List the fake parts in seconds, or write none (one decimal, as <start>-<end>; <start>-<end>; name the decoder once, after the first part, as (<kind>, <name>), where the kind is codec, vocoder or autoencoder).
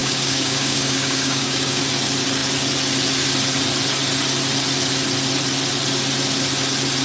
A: 0.0-1.8 (codec, DAC)